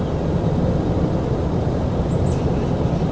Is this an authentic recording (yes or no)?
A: yes